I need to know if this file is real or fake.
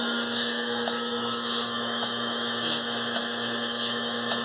fake